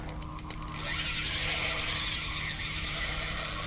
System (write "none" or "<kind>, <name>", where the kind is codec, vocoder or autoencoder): none